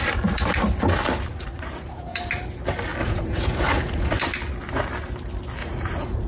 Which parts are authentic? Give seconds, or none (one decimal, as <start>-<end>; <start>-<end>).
0.0-1.3; 2.2-3.0; 4.2-5.6